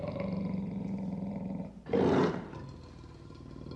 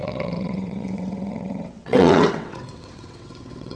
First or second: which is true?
first